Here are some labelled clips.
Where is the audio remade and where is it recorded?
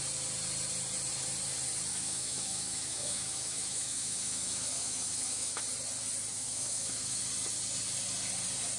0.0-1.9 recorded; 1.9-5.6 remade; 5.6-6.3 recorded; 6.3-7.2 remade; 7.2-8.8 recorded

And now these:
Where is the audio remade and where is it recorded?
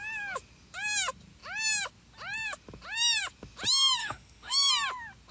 0.0-4.0 recorded; 4.0-4.7 remade; 4.7-5.3 recorded